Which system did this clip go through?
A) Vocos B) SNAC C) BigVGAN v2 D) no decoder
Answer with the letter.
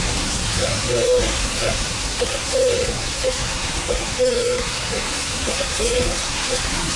B